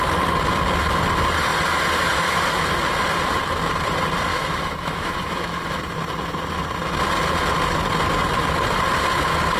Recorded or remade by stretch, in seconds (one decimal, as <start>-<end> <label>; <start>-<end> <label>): 0.0-4.3 recorded; 4.3-5.8 remade; 5.8-9.6 recorded